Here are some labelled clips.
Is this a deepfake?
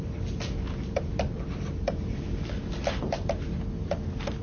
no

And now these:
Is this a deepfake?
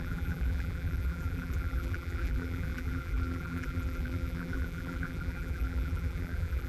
yes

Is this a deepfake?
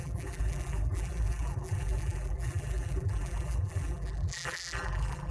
yes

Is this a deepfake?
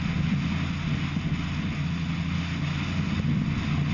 no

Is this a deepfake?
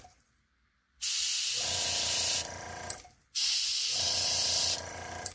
yes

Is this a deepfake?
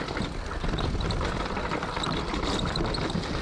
no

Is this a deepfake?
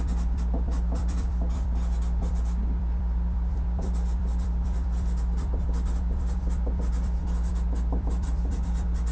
yes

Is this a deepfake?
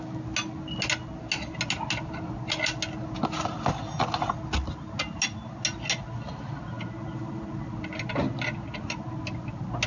no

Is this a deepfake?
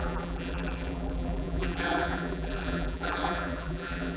yes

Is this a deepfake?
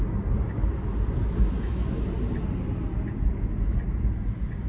no